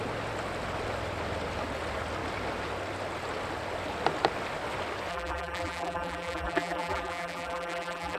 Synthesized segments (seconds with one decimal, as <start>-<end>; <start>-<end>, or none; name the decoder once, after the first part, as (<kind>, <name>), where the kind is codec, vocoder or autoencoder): 5.1-8.2 (vocoder, BigVGAN v2)